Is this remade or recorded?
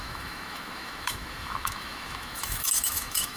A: remade